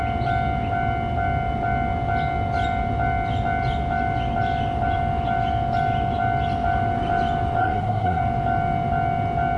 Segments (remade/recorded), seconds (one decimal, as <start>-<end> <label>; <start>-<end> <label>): 0.0-7.6 recorded; 7.6-8.2 remade; 8.2-9.6 recorded